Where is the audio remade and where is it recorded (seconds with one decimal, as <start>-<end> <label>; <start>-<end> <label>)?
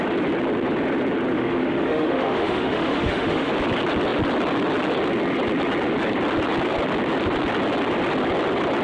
0.0-1.3 recorded; 1.3-3.5 remade; 3.5-8.8 recorded